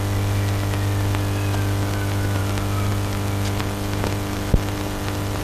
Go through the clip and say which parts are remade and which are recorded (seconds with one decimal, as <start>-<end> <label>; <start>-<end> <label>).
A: 0.0-5.4 recorded